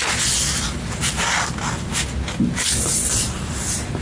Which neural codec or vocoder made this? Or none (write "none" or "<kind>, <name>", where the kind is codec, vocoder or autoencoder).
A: none